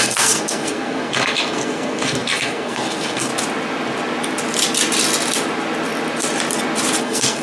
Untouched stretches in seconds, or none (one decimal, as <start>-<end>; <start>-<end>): 3.3-7.0